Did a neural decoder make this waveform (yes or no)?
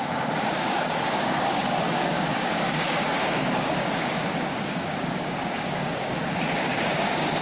yes